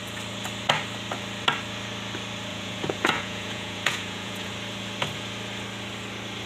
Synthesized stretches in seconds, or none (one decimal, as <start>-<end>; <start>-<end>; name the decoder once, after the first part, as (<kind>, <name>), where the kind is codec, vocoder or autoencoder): 2.5-4.5 (vocoder, Vocos)